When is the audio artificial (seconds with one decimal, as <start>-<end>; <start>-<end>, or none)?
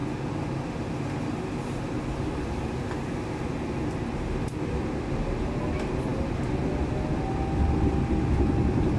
none